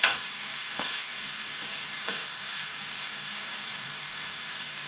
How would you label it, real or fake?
fake